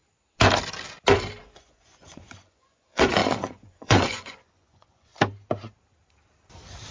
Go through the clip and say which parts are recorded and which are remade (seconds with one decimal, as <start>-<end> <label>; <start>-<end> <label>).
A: 0.0-1.4 recorded; 1.4-5.1 remade; 5.1-6.9 recorded